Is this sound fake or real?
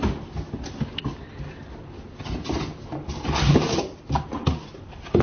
real